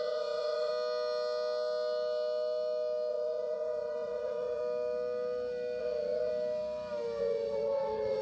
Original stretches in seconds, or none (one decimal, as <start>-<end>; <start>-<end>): 0.7-3.1; 4.6-5.8; 6.3-7.2